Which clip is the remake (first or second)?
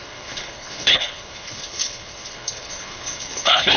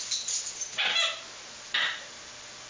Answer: first